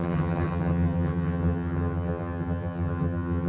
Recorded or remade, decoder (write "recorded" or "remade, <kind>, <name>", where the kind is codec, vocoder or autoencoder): remade, vocoder, HiFi-GAN